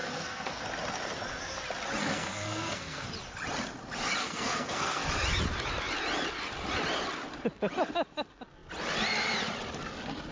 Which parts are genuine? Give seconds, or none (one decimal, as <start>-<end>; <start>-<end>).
0.6-2.0; 3.1-4.2; 5.1-10.3